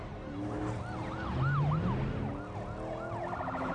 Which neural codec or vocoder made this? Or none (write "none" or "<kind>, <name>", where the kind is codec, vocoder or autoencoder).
none